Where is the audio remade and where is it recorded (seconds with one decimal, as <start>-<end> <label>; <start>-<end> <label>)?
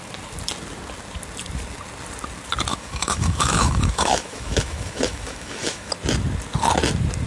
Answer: 0.0-2.7 recorded; 2.7-5.9 remade; 5.9-7.3 recorded